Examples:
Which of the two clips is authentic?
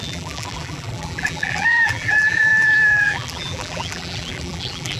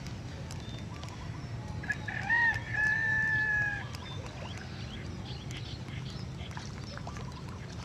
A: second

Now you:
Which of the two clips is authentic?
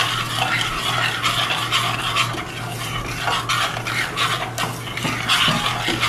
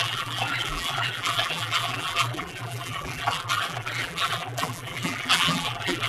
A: first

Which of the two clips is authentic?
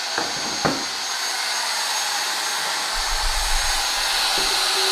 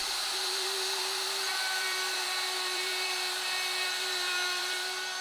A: first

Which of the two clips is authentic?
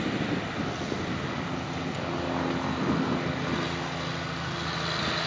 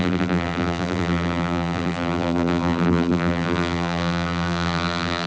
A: first